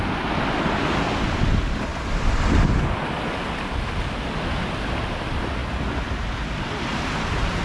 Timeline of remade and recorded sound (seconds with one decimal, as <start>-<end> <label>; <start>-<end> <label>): 0.0-6.9 recorded; 6.9-7.6 remade